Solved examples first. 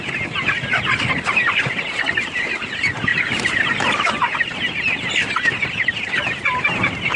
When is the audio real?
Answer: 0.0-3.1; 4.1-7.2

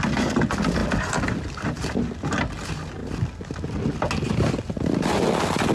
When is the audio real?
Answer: 0.0-5.7